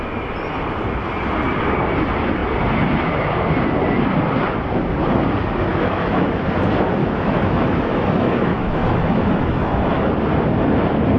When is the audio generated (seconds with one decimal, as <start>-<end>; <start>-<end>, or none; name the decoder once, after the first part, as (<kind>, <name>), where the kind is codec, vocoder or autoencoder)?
5.7-6.4 (autoencoder, DAC-VAE); 7.0-10.1

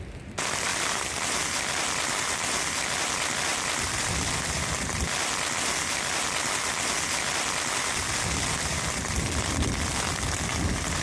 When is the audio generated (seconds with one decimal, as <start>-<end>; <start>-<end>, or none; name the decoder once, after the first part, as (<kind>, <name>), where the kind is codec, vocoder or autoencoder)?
none